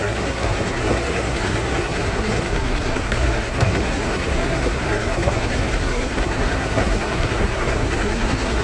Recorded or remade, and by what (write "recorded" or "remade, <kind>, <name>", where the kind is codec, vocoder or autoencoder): remade, codec, SNAC